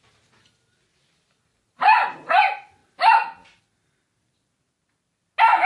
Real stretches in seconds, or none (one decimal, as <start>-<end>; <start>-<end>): 0.0-1.5; 2.3-5.7